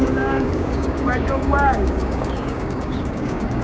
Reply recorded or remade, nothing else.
remade